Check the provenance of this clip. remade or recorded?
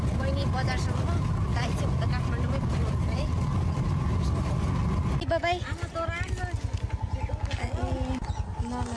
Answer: recorded